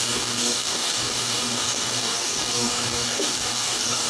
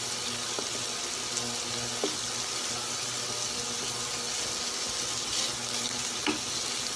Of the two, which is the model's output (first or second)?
first